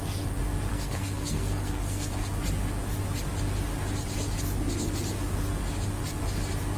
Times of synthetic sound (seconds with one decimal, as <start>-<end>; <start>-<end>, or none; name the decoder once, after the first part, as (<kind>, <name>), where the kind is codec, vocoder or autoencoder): 0.7-2.1 (codec, SNAC)